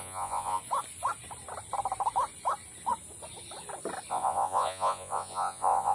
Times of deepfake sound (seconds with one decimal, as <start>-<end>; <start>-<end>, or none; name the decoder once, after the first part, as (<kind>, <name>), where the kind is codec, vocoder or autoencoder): 0.0-0.6 (vocoder, Vocos); 4.1-5.9